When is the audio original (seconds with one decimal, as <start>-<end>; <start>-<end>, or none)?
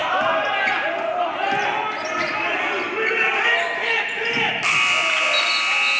0.0-6.0